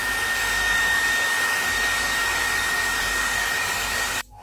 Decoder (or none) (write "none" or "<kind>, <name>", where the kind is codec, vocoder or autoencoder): codec, DAC